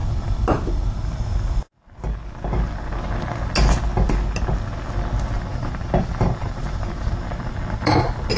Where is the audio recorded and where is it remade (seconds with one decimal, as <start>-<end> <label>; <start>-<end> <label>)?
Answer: 0.0-5.5 recorded; 5.5-7.1 remade; 7.1-8.4 recorded

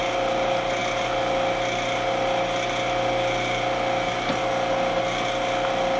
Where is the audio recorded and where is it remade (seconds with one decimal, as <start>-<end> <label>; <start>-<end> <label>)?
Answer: 0.0-6.0 recorded

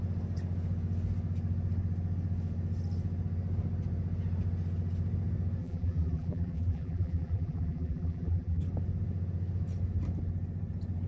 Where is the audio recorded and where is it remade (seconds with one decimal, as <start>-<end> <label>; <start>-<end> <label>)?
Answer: 0.0-5.6 recorded; 5.6-8.6 remade; 8.6-11.1 recorded

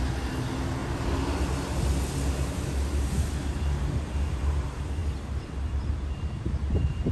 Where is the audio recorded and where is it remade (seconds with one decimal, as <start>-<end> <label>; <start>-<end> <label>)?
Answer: 0.0-5.0 recorded; 5.0-7.1 remade

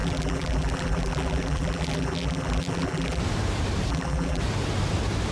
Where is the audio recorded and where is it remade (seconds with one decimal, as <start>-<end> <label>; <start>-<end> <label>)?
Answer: 0.0-3.2 remade; 3.2-3.9 recorded; 3.9-4.4 remade; 4.4-5.3 recorded